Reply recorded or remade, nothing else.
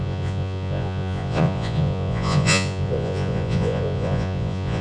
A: remade